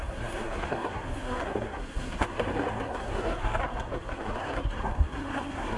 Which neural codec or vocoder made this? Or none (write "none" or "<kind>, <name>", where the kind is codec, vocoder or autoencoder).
codec, SNAC